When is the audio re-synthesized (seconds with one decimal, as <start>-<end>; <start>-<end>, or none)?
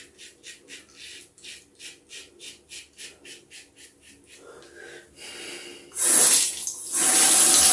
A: none